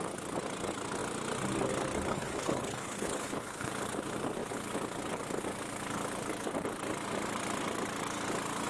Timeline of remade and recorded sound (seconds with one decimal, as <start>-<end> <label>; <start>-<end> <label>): 0.0-2.1 recorded; 2.1-3.7 remade; 3.7-8.7 recorded